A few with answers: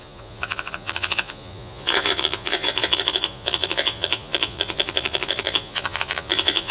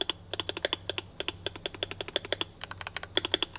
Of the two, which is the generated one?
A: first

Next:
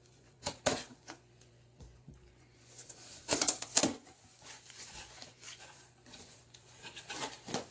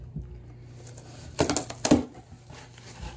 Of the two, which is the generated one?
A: first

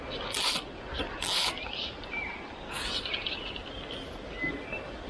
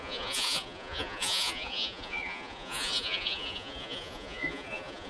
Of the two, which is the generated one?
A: second